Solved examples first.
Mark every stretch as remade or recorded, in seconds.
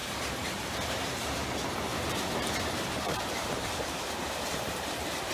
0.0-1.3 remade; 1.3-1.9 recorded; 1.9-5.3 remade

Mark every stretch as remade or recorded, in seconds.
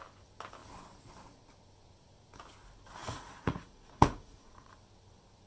0.0-3.0 recorded; 3.0-4.7 remade; 4.7-5.5 recorded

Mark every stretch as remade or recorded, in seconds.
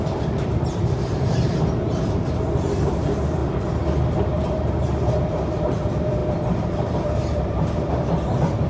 0.0-3.4 remade; 3.4-4.2 recorded; 4.2-8.7 remade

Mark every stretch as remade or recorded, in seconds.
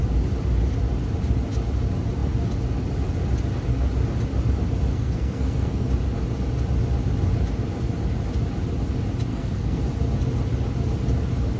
0.0-4.9 recorded; 4.9-5.9 remade; 5.9-9.3 recorded; 9.3-9.8 remade; 9.8-11.6 recorded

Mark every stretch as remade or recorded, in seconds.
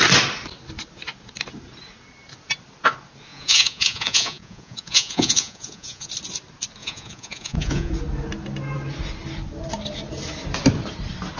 0.0-3.3 recorded; 3.3-6.1 remade; 6.1-6.8 recorded; 6.8-7.9 remade; 7.9-11.4 recorded